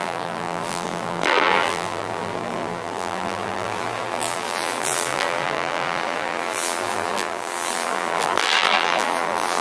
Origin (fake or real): fake